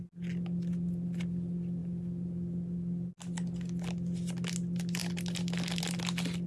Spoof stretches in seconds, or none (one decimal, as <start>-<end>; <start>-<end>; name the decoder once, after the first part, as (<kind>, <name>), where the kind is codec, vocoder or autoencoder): none